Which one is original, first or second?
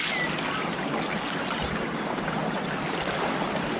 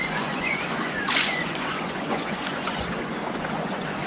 first